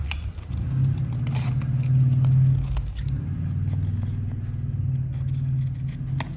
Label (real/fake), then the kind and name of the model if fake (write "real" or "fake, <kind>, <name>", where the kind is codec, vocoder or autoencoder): real